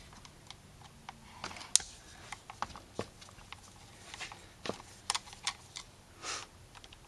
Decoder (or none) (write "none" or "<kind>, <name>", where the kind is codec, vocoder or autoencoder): none